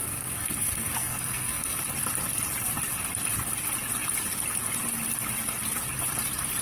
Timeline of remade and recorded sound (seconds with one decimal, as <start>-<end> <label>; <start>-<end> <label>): 0.0-1.8 remade; 1.8-6.6 recorded

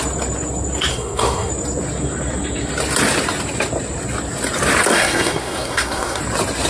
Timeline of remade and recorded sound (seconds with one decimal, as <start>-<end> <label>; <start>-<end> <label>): 0.0-0.9 recorded; 0.9-1.5 remade; 1.5-4.9 recorded; 4.9-6.2 remade; 6.2-6.7 recorded

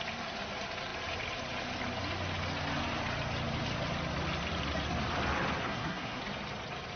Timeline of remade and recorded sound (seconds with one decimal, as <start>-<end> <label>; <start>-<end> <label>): 0.0-5.6 recorded; 5.6-6.2 remade; 6.2-7.0 recorded

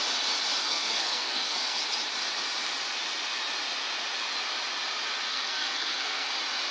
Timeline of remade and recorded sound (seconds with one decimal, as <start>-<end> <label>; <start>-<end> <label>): 0.0-0.6 recorded; 0.6-1.8 remade; 1.8-5.3 recorded; 5.3-6.3 remade; 6.3-6.7 recorded

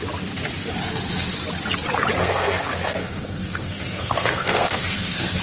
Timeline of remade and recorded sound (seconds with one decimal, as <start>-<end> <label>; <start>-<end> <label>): 0.0-2.2 recorded; 2.2-5.4 remade

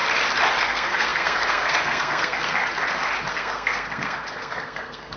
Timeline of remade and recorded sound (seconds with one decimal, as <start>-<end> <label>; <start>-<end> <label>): 0.0-0.6 recorded; 0.6-2.6 remade; 2.6-3.3 recorded; 3.3-5.2 remade

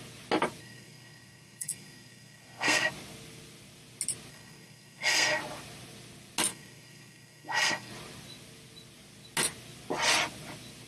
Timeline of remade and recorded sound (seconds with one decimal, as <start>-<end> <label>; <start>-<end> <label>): 0.0-0.6 recorded; 0.6-2.9 remade; 2.9-4.3 recorded; 4.3-5.4 remade; 5.4-6.5 recorded; 6.5-7.9 remade; 7.9-10.9 recorded